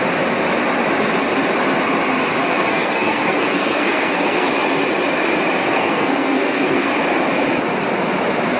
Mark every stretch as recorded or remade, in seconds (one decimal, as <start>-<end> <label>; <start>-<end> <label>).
0.0-2.4 recorded; 2.4-4.5 remade; 4.5-5.6 recorded; 5.6-6.9 remade; 6.9-8.6 recorded